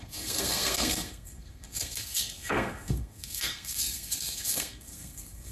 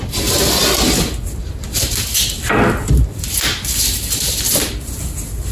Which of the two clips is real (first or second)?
second